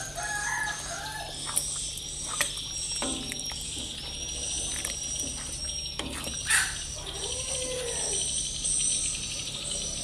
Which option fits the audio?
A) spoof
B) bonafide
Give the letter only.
B